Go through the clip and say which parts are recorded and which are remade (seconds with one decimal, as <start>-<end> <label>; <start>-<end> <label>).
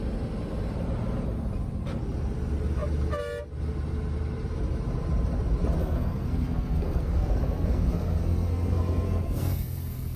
0.0-5.8 recorded; 5.8-10.2 remade